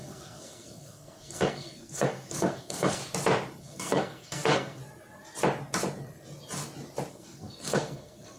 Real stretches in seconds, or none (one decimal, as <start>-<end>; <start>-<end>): 3.0-3.6; 4.8-7.1